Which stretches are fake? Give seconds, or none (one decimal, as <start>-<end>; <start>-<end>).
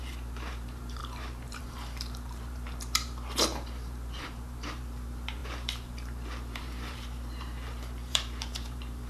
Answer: 0.0-9.1